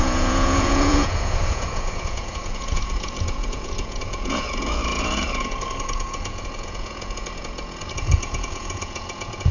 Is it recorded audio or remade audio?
remade